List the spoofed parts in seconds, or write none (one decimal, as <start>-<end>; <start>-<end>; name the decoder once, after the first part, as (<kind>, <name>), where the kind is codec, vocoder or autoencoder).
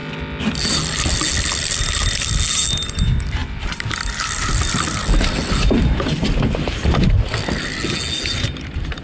none